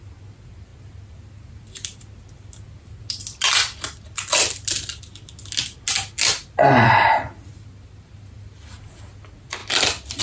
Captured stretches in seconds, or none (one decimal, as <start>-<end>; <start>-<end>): 0.0-10.2